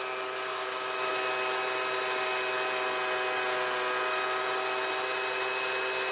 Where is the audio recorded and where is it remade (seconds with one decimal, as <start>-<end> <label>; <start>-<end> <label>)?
0.0-0.5 recorded; 0.5-1.1 remade; 1.1-6.1 recorded